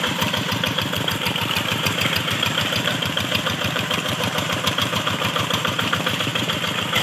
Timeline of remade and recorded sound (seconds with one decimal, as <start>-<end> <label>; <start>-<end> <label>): 0.0-6.3 remade; 6.3-7.0 recorded